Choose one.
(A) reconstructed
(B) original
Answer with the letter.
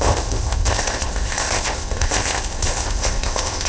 A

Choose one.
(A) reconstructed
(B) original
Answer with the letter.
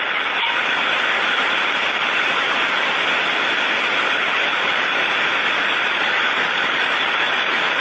B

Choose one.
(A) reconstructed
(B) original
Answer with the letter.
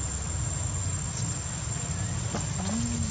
B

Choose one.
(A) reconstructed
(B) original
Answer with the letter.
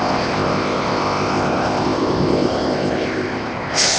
A